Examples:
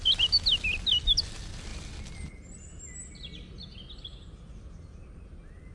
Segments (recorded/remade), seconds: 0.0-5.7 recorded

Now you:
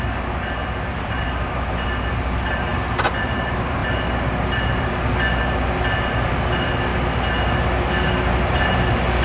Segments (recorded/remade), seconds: 0.0-9.2 recorded